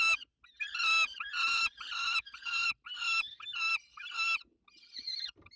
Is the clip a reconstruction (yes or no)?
no